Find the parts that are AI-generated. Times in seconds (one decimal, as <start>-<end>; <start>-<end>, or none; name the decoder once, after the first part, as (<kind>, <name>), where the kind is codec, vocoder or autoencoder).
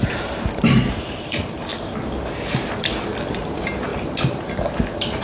0.0-1.7 (vocoder, BigVGAN v2); 3.3-5.2